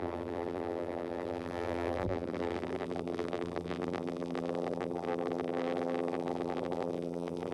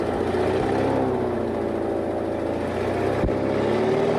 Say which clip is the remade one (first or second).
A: first